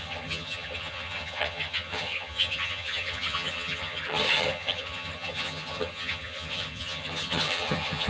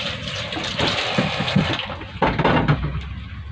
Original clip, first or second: second